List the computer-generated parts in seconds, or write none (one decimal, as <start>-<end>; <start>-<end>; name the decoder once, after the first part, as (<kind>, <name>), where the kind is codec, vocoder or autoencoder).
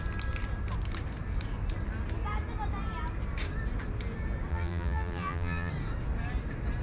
4.5-5.7 (vocoder, BigVGAN v2)